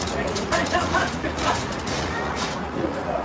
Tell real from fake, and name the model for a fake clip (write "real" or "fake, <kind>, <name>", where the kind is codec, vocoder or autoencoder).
fake, vocoder, Vocos